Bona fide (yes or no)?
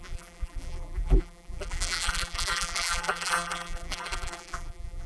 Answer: no